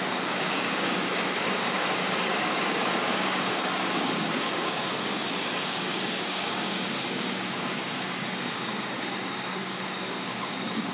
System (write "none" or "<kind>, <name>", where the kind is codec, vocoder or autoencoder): codec, DAC